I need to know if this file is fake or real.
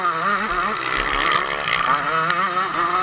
real